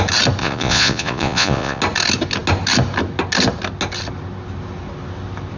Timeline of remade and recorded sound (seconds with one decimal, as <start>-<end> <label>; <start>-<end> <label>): 0.0-0.4 recorded; 0.4-1.8 remade; 1.8-5.6 recorded